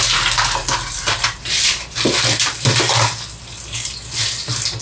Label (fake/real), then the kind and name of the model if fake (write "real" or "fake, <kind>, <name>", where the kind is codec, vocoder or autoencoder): real